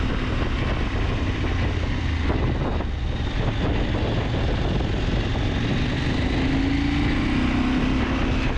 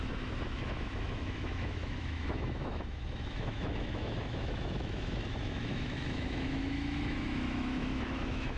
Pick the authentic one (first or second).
first